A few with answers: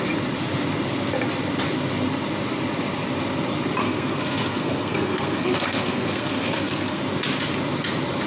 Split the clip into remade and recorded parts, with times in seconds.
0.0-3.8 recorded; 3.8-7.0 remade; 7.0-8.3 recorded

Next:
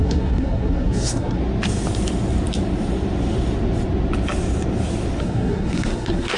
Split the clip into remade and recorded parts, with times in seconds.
0.0-1.4 remade; 1.4-5.2 recorded; 5.2-6.4 remade

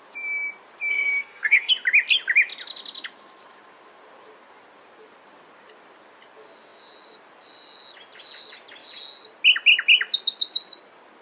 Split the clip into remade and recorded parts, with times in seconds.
0.0-0.9 recorded; 0.9-1.7 remade; 1.7-11.2 recorded

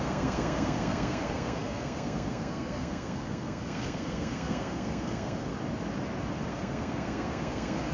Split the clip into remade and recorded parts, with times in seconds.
0.0-5.5 remade; 5.5-6.5 recorded; 6.5-7.9 remade